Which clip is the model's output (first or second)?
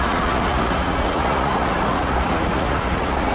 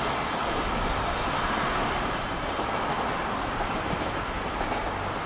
first